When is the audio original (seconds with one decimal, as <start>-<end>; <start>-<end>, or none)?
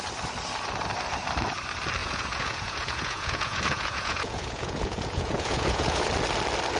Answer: 0.0-2.0; 6.1-6.8